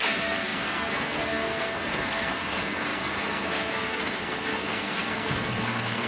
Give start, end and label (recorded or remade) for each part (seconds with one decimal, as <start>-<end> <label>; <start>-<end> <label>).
0.0-6.1 remade